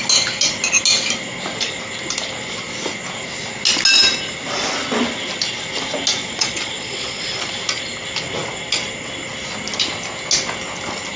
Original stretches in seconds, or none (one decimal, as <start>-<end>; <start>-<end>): 0.0-6.2; 7.2-11.2